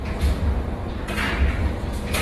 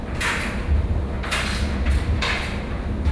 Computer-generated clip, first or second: second